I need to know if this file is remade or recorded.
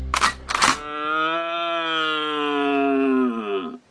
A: recorded